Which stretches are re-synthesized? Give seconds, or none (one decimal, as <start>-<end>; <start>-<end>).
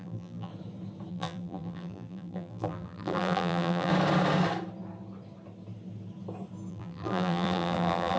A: 0.0-0.5; 1.1-3.9; 6.7-8.2